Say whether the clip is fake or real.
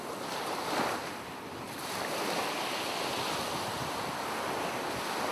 real